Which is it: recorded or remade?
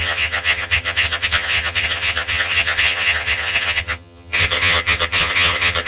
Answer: remade